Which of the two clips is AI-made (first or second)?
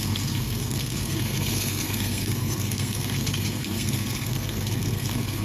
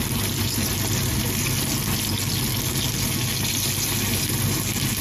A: first